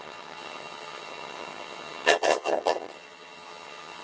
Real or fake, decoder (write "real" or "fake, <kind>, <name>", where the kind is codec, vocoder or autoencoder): fake, vocoder, HiFi-GAN